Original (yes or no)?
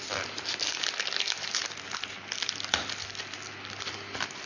yes